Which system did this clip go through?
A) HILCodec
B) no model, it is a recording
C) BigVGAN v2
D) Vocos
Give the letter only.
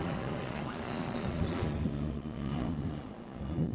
D